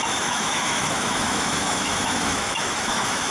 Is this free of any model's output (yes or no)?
no